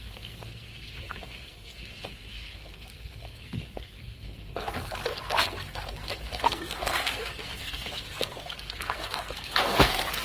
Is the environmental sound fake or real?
fake